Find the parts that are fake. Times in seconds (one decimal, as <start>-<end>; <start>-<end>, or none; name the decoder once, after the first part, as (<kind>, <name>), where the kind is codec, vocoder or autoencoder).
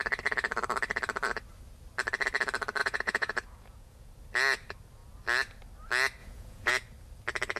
2.8-4.1 (vocoder, Vocos); 6.2-6.7